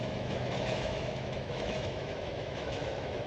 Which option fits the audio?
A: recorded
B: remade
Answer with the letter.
B